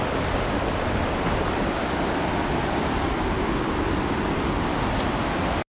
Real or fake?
real